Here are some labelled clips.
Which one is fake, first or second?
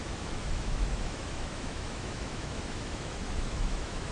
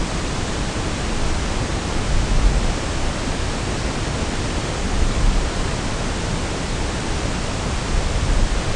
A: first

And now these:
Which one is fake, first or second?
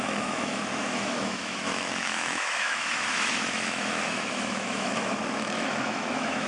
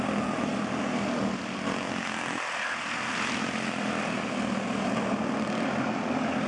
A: first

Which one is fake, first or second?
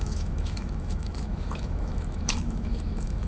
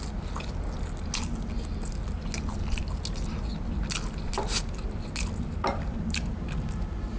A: first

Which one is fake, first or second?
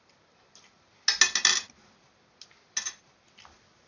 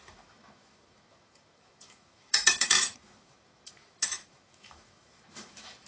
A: second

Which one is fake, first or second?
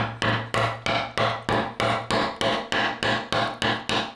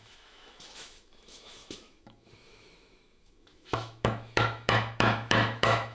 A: second